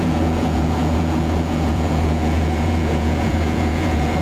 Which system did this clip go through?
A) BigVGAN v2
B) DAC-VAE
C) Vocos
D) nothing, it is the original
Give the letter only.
C